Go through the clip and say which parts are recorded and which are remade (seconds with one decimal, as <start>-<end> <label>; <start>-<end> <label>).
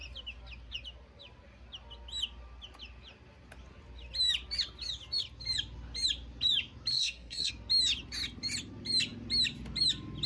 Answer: 0.0-6.9 recorded; 6.9-7.5 remade; 7.5-10.3 recorded